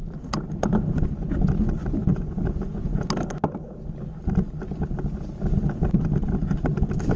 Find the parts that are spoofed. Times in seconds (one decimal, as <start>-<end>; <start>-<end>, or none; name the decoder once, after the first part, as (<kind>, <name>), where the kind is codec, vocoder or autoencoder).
2.1-3.1 (vocoder, Vocos)